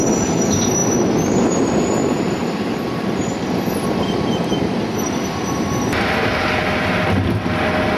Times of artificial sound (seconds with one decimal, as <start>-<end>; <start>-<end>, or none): 2.0-4.4; 4.9-6.3